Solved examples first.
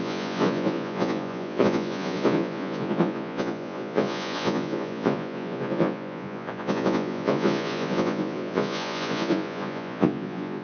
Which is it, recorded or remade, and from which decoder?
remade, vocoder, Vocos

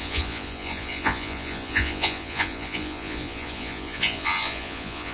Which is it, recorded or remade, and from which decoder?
remade, vocoder, Vocos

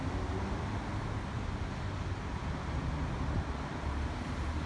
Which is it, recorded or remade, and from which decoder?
recorded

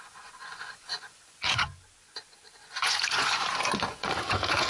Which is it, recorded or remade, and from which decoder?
remade, vocoder, Vocos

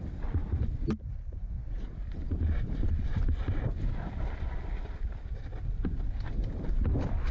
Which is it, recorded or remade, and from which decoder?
recorded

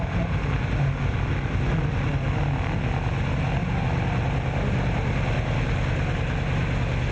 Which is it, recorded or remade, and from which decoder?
recorded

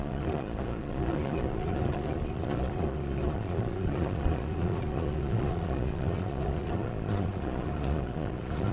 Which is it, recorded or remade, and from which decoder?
remade, vocoder, Vocos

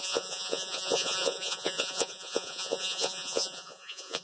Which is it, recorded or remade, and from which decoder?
remade, vocoder, Vocos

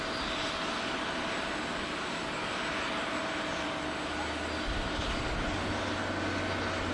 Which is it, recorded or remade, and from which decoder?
recorded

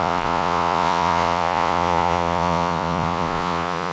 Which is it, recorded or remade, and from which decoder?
remade, vocoder, Vocos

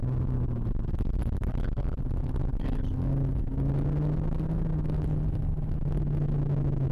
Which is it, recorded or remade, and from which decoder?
recorded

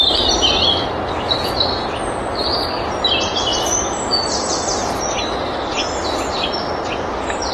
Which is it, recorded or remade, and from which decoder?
recorded